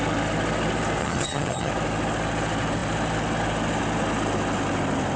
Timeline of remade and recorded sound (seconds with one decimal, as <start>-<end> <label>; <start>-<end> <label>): 0.0-1.0 recorded; 1.0-1.7 remade; 1.7-5.2 recorded

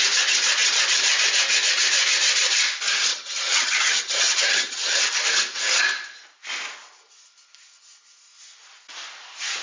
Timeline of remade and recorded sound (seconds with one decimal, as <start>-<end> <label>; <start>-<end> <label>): 0.0-3.1 recorded; 3.1-5.0 remade; 5.0-9.6 recorded

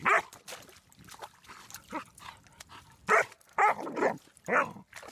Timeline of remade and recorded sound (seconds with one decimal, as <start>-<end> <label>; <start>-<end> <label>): 0.0-5.1 recorded

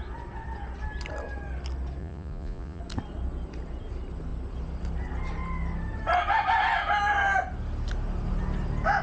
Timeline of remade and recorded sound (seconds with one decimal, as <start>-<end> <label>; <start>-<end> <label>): 0.0-2.0 recorded; 2.0-2.8 remade; 2.8-9.0 recorded

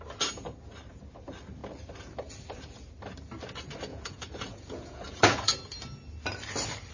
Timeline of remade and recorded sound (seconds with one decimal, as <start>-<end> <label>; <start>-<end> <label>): 0.0-3.9 recorded; 3.9-5.4 remade; 5.4-6.9 recorded